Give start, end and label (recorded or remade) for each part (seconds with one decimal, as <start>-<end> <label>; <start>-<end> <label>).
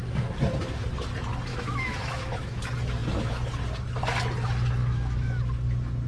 0.0-1.5 recorded; 1.5-2.6 remade; 2.6-4.8 recorded; 4.8-5.4 remade; 5.4-6.1 recorded